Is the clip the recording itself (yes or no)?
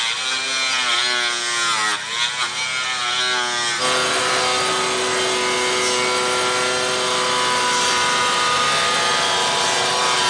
yes